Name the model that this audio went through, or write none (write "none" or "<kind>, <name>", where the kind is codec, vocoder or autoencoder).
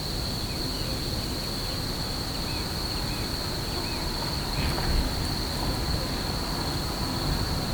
none